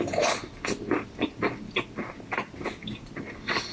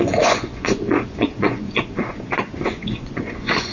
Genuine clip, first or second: first